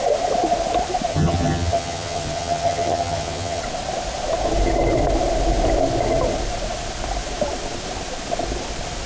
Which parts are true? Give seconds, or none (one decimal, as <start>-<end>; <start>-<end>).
0.0-1.1; 3.6-9.1